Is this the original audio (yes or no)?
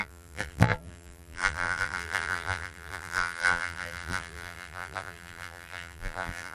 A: no